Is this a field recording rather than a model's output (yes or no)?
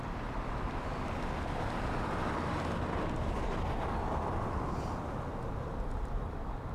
yes